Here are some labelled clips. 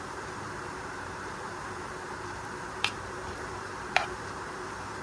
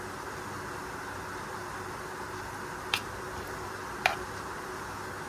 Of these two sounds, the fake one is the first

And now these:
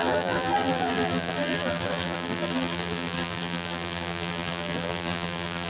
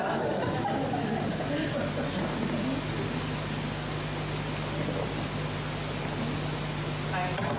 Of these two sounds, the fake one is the first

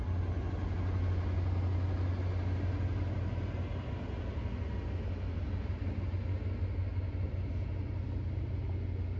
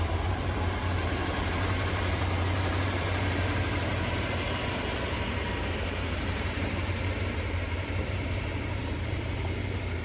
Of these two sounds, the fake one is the second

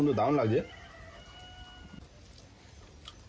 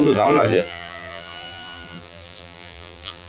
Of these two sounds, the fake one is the second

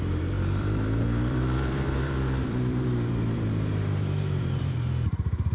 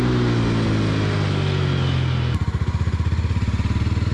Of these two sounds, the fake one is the first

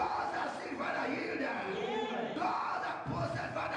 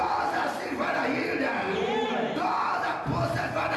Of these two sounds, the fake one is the first